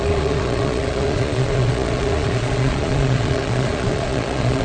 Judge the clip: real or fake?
fake